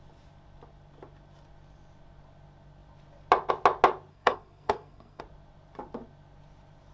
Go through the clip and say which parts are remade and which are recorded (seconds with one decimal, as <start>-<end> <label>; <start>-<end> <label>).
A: 0.0-4.1 recorded; 4.1-5.2 remade; 5.2-6.9 recorded